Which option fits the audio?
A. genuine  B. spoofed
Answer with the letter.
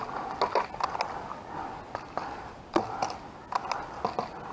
A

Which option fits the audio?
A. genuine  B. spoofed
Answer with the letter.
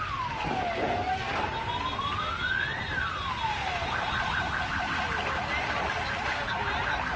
A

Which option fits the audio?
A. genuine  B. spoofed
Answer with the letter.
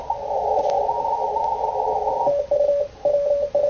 A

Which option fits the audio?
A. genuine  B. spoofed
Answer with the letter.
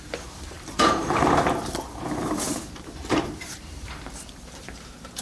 B